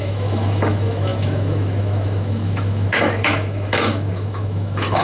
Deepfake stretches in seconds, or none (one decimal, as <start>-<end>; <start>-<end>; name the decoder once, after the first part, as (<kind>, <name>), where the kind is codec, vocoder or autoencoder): 0.0-5.0 (autoencoder, DAC-VAE)